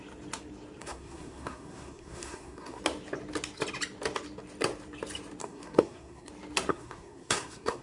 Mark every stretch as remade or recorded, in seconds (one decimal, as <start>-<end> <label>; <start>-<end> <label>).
0.0-0.8 recorded; 0.8-2.8 remade; 2.8-5.4 recorded; 5.4-6.3 remade; 6.3-6.7 recorded; 6.7-7.8 remade